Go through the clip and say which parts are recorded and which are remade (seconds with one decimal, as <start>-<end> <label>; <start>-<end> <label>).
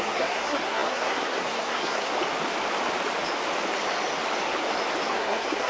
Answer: 0.0-2.1 remade; 2.1-5.1 recorded; 5.1-5.7 remade